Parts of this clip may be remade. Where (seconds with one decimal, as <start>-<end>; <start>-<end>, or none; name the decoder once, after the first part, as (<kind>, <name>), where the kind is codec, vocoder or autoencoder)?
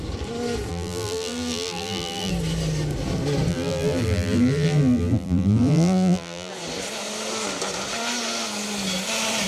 0.7-2.3 (vocoder, BigVGAN v2); 3.5-6.5